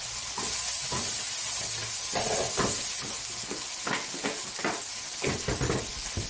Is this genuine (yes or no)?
yes